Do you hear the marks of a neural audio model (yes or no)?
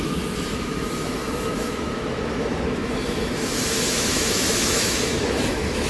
yes